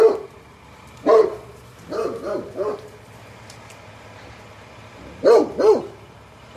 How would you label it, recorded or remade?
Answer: recorded